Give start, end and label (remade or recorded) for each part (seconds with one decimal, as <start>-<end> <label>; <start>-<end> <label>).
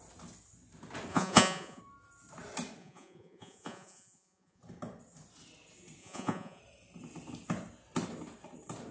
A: 0.0-1.1 recorded; 1.1-1.8 remade; 1.8-2.8 recorded; 2.8-4.6 remade; 4.6-6.0 recorded; 6.0-6.6 remade; 6.6-8.9 recorded